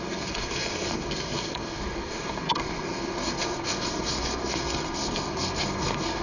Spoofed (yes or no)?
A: yes